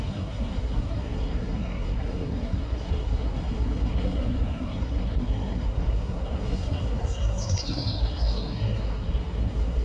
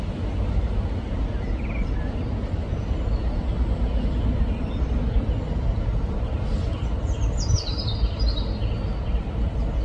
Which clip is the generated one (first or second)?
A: first